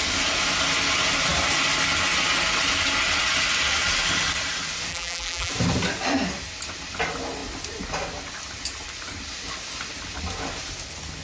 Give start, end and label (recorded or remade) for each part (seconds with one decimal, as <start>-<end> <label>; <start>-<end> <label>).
0.0-4.9 recorded; 4.9-5.5 remade; 5.5-11.2 recorded